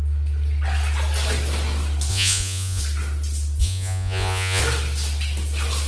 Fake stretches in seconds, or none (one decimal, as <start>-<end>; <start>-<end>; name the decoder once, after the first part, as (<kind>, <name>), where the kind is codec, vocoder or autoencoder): 2.1-2.8 (vocoder, Vocos); 3.6-4.6

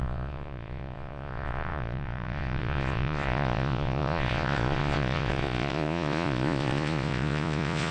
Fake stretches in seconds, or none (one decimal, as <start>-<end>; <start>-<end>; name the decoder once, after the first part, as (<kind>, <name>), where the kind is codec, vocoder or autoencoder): 0.0-7.9 (vocoder, Vocos)

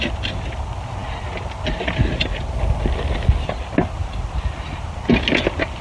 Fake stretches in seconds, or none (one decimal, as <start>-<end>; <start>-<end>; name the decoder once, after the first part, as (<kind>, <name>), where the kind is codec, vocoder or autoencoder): none